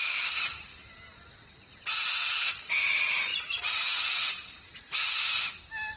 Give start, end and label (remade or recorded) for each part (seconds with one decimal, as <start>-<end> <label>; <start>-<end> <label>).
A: 0.0-6.0 recorded